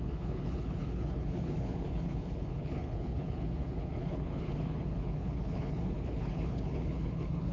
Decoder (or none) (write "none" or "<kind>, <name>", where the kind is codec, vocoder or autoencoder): codec, HILCodec